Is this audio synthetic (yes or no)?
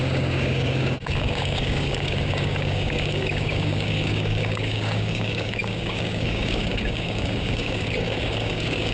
yes